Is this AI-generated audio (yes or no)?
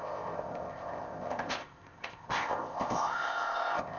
yes